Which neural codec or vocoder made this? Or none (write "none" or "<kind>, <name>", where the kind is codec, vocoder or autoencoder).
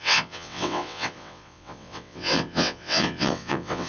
vocoder, WaveNeXt